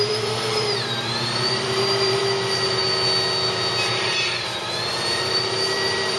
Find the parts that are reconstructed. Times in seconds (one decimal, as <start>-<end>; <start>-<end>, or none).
0.0-2.2; 3.9-6.2